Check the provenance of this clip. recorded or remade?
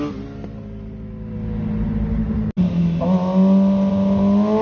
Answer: recorded